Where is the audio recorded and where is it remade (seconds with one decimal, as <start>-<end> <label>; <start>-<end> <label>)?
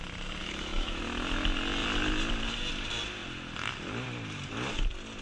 0.0-0.4 recorded; 0.4-1.0 remade; 1.0-5.2 recorded